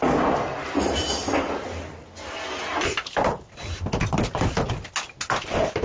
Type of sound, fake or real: real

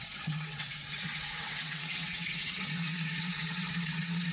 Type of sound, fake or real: fake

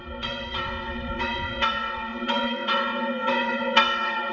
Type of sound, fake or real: fake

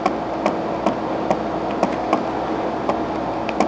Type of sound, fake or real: real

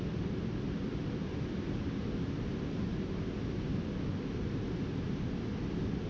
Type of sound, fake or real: real